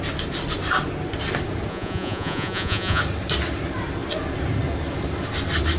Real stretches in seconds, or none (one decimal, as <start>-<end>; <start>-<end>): 0.0-1.7; 3.0-5.8